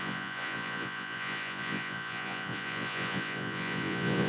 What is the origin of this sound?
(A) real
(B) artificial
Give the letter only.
B